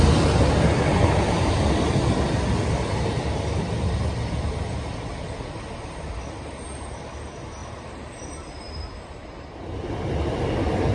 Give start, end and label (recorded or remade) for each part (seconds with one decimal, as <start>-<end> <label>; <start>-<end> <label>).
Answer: 0.0-10.9 recorded